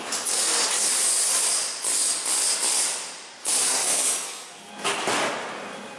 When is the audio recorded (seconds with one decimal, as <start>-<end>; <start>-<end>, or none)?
0.0-3.4; 4.7-6.0